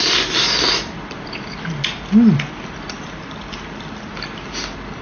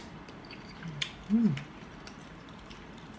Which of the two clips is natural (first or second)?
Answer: first